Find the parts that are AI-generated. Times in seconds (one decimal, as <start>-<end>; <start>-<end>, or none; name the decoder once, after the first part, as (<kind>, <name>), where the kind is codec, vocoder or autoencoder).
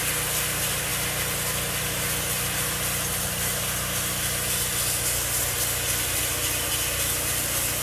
none